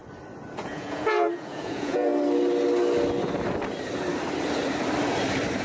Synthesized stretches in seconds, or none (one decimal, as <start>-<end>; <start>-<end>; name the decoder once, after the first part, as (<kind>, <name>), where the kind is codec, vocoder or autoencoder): 0.6-2.1 (vocoder, Vocos)